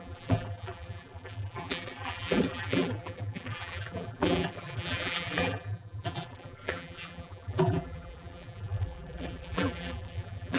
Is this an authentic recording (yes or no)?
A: no